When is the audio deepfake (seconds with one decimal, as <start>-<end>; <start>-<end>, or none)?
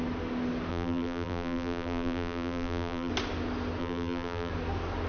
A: 0.7-3.1; 3.8-4.5